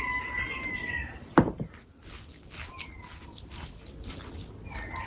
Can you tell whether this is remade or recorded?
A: recorded